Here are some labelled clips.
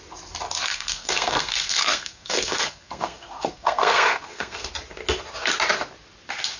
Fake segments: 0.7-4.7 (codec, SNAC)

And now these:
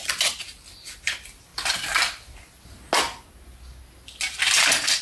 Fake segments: none